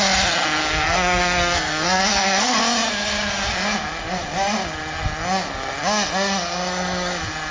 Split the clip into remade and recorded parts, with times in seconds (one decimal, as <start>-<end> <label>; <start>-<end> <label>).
0.0-0.6 recorded; 0.6-2.6 remade; 2.6-7.5 recorded